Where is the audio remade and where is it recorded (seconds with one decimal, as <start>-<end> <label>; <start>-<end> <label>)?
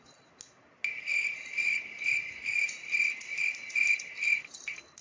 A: 0.0-1.1 recorded; 1.1-4.1 remade; 4.1-5.0 recorded